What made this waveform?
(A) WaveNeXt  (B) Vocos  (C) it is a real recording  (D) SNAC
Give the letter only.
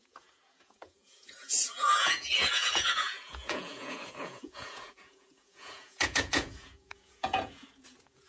B